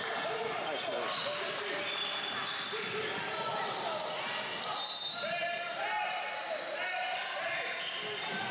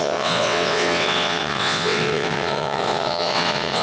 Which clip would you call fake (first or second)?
second